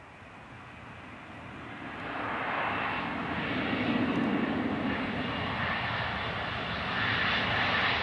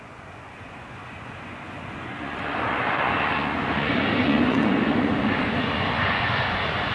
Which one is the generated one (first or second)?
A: second